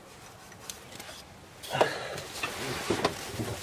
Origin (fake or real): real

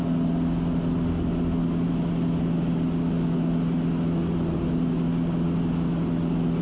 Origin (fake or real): real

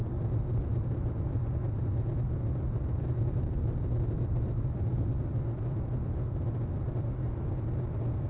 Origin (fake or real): real